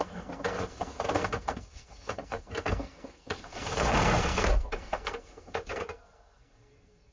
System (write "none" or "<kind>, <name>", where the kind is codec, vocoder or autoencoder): codec, SNAC